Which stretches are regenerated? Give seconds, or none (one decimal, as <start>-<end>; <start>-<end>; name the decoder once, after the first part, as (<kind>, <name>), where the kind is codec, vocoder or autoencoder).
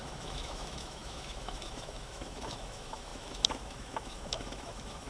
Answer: 0.0-5.1 (autoencoder, DAC-VAE)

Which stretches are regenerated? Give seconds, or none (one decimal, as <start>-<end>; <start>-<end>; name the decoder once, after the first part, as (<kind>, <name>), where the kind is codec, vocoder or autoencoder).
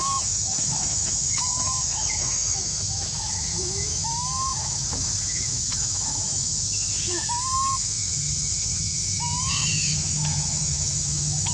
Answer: 0.0-11.5 (autoencoder, DAC-VAE)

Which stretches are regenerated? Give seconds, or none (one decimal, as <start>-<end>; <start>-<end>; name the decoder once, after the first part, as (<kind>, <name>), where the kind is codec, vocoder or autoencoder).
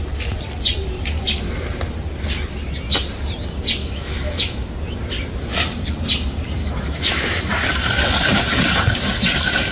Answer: 3.8-4.7 (autoencoder, DAC-VAE); 6.6-7.5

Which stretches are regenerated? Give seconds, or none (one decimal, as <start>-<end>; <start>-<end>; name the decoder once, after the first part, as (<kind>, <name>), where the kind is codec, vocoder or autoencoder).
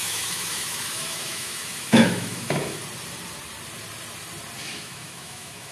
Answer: 0.0-2.8 (autoencoder, DAC-VAE); 4.6-5.7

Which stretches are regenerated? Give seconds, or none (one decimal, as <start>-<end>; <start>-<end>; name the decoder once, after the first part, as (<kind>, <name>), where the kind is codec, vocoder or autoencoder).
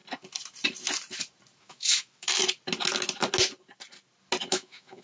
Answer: 1.6-2.4 (autoencoder, DAC-VAE); 4.5-5.0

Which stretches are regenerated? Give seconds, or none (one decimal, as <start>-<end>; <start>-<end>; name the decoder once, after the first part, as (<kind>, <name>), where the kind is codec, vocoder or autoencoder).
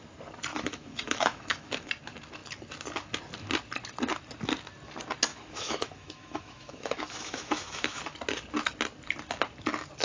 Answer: 0.5-1.9 (autoencoder, DAC-VAE); 5.3-8.0